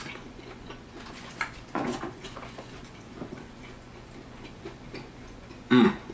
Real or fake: fake